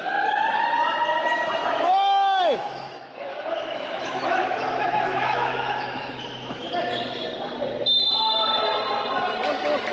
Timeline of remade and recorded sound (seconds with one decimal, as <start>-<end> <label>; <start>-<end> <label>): 0.0-1.6 recorded; 1.6-6.7 remade; 6.7-9.9 recorded